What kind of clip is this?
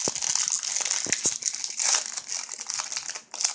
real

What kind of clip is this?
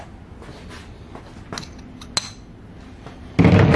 real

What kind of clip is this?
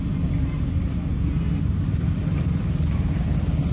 real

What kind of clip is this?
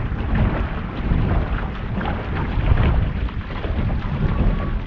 real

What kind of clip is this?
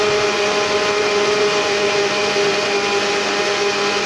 real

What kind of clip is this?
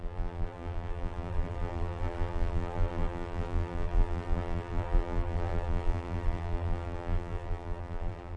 fake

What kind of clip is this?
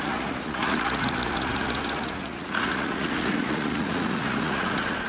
fake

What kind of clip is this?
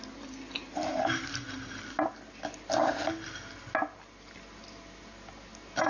real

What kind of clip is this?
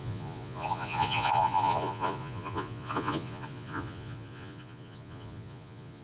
fake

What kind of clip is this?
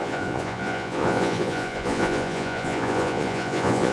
fake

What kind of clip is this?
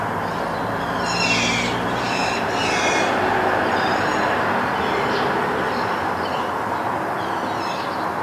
real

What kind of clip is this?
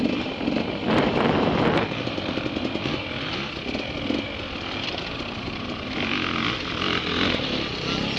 real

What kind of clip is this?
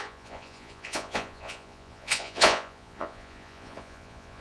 fake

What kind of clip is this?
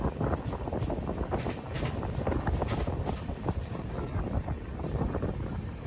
real